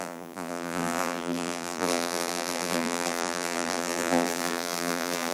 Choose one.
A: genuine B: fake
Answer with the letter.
B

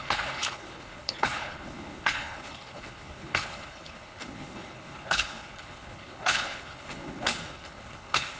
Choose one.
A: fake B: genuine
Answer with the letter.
A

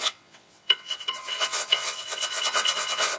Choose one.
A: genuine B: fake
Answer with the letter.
B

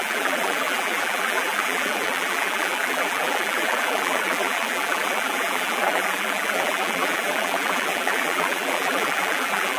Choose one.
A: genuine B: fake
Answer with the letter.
B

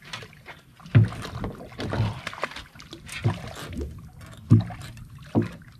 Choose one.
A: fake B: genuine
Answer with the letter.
B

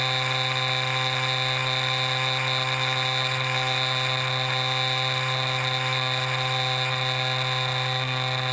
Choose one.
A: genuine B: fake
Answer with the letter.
A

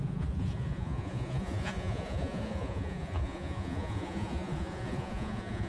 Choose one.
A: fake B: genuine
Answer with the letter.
A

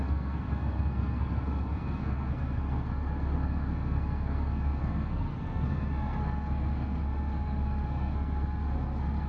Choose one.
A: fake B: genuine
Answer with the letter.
A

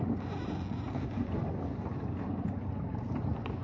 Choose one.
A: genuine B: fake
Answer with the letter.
A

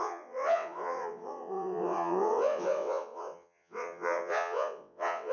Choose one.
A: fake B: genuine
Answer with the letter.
A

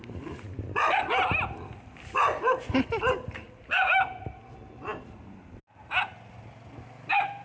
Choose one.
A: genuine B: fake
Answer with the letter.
A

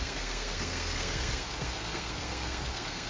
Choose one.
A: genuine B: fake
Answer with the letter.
B